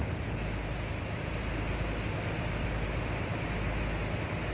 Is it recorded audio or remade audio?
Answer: recorded